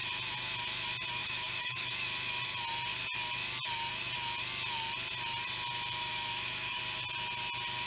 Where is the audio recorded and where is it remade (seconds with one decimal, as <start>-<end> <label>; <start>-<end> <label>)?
0.0-1.2 recorded; 1.2-1.9 remade; 1.9-6.1 recorded; 6.1-6.8 remade; 6.8-7.9 recorded